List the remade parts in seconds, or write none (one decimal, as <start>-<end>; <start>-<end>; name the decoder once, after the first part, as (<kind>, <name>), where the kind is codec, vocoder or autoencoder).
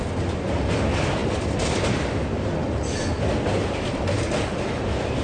none